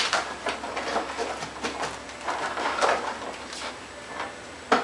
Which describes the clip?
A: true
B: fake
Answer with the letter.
A